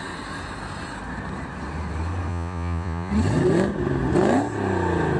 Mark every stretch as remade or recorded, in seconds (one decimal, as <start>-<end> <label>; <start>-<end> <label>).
0.0-2.3 recorded; 2.3-3.1 remade; 3.1-5.2 recorded